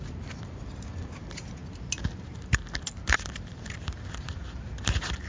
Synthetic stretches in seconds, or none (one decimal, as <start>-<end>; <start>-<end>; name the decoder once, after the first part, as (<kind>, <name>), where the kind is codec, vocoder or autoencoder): none